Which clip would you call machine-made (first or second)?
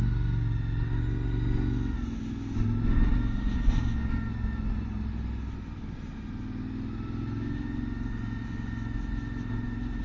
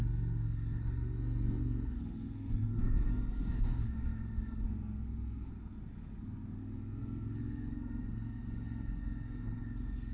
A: second